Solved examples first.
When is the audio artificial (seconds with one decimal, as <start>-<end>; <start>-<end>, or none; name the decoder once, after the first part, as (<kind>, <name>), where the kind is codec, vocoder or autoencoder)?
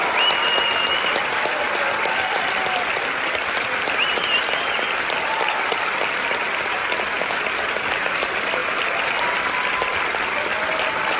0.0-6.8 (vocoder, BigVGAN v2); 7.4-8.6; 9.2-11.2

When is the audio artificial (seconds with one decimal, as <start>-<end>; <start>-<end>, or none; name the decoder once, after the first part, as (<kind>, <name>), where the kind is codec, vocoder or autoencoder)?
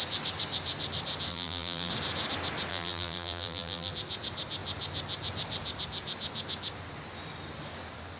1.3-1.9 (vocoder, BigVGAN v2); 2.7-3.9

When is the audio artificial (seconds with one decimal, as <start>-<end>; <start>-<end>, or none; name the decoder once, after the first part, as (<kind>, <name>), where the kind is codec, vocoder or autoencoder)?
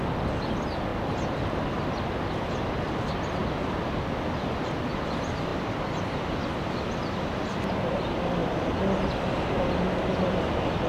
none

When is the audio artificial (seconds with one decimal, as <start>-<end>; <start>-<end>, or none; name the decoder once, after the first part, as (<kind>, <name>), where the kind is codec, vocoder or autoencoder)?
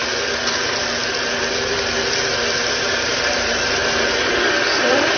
3.1-5.2 (vocoder, BigVGAN v2)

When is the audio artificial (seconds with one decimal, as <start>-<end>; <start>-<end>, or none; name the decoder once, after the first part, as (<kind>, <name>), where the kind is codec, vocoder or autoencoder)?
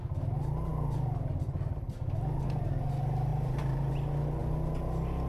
3.3-3.9 (vocoder, BigVGAN v2)